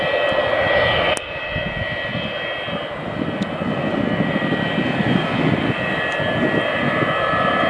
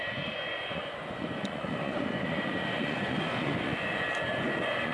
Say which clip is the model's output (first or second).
second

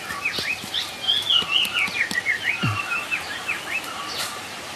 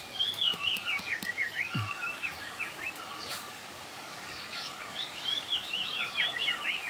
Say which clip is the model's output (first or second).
second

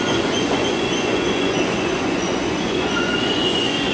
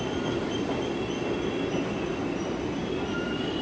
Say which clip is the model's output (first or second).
first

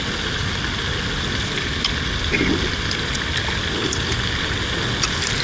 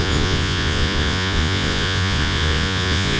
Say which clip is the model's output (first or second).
second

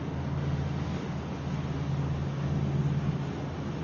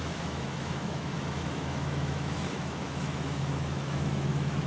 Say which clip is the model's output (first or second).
second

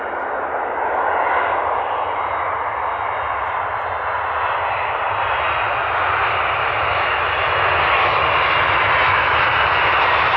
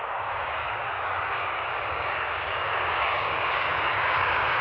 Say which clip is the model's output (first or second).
second